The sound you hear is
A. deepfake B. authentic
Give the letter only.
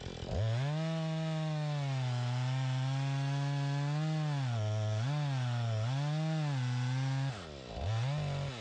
B